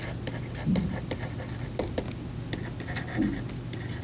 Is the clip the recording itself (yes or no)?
yes